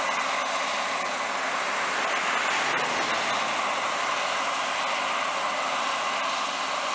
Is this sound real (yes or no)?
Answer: yes